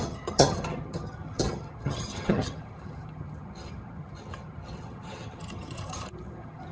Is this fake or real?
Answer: fake